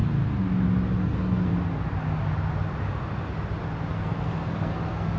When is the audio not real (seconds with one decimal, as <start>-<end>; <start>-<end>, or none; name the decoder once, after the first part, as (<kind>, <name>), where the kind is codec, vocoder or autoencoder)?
1.0-1.5 (codec, SNAC); 3.9-5.2